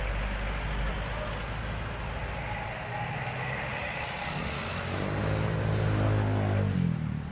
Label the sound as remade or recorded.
recorded